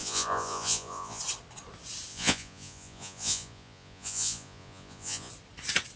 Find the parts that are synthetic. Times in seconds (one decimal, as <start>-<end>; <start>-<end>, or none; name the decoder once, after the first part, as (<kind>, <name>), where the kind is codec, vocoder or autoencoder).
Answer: 0.0-1.2 (vocoder, Vocos); 2.1-5.3